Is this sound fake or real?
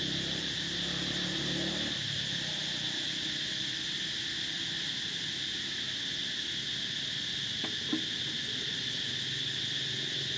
real